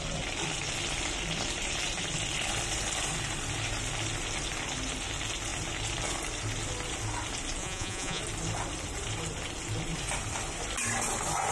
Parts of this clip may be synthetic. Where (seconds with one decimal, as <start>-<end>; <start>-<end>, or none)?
7.6-8.2